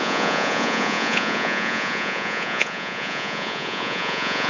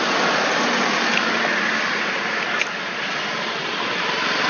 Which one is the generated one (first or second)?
first